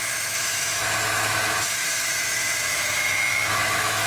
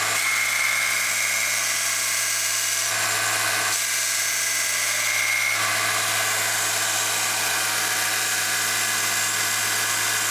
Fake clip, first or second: first